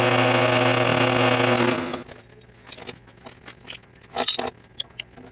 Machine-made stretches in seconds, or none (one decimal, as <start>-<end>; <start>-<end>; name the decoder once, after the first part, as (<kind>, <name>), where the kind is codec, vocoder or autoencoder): none